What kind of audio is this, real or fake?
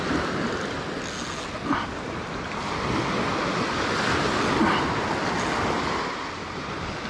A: real